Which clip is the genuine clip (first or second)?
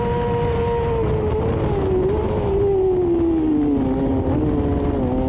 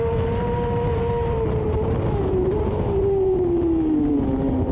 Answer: first